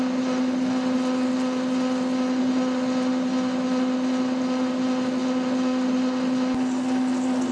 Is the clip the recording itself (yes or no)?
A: yes